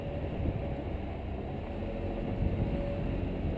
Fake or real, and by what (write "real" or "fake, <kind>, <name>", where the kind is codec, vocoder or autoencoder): real